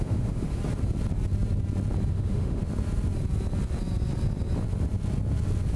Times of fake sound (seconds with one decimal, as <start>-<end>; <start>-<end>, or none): 0.0-0.6; 2.1-2.6